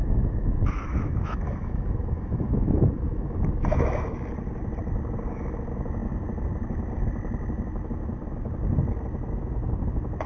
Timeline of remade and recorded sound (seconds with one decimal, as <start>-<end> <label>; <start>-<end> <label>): 0.0-4.3 remade; 4.3-10.3 recorded